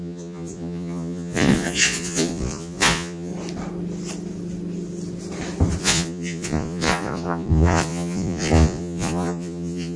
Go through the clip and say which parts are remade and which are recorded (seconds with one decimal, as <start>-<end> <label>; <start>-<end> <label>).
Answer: 0.0-3.3 remade; 3.3-5.8 recorded; 5.8-10.0 remade